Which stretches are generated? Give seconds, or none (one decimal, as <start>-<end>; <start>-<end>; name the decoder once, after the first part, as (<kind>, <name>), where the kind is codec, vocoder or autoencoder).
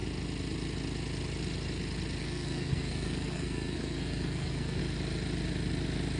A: 2.2-4.8 (codec, SNAC)